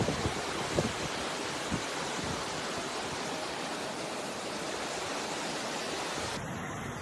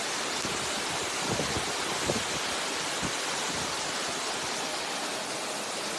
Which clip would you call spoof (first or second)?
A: first